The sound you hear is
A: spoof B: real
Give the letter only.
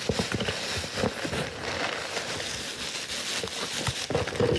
B